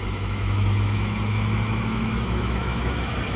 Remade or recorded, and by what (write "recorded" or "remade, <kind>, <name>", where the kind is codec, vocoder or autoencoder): remade, autoencoder, DAC-VAE